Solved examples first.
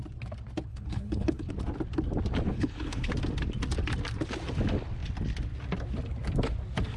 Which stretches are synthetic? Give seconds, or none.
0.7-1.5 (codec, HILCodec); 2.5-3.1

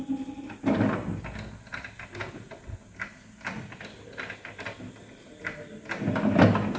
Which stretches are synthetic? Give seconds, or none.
none